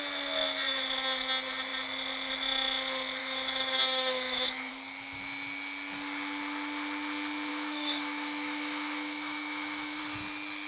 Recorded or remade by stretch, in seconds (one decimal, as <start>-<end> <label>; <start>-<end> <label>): 0.0-3.2 recorded; 3.2-4.7 remade; 4.7-7.5 recorded; 7.5-10.0 remade; 10.0-10.7 recorded